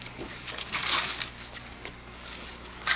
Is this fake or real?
fake